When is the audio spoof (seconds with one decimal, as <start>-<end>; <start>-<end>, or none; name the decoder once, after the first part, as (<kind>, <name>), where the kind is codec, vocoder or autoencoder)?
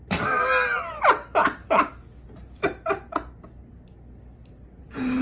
none